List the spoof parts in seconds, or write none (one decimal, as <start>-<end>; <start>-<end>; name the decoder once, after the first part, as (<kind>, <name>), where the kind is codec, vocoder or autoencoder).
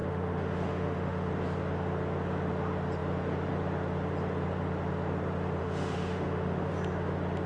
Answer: 0.0-1.3 (autoencoder, DAC-VAE); 5.6-6.7